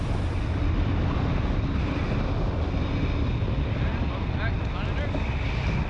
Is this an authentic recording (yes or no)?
yes